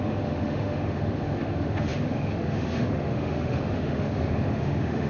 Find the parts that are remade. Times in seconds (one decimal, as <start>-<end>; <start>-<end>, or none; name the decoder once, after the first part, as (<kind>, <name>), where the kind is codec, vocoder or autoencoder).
0.0-5.1 (autoencoder, DAC-VAE)